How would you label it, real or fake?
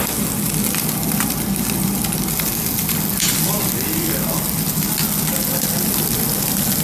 real